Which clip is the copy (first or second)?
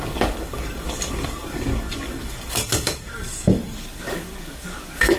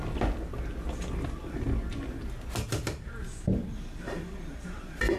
first